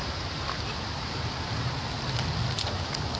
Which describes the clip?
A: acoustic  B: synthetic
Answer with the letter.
A